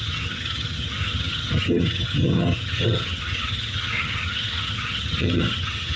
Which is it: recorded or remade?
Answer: remade